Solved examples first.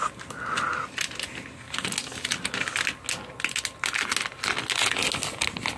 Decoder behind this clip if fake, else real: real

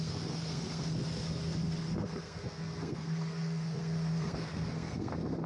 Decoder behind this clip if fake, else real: fake, codec, SNAC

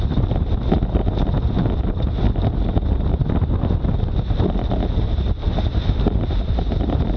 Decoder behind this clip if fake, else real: real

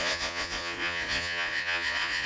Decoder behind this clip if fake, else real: fake, vocoder, Vocos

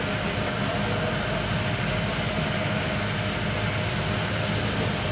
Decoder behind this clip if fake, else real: real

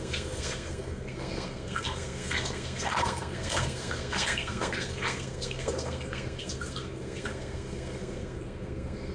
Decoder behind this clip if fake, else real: fake, codec, SNAC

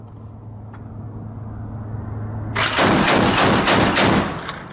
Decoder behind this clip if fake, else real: real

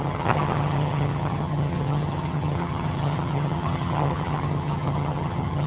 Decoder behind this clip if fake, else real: fake, vocoder, HiFi-GAN